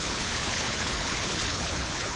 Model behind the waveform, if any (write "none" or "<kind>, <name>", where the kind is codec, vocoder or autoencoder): codec, HILCodec